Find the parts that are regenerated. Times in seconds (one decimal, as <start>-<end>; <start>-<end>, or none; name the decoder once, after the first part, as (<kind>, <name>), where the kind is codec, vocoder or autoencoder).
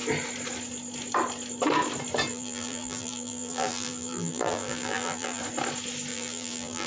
2.3-5.4 (vocoder, BigVGAN v2); 6.1-6.9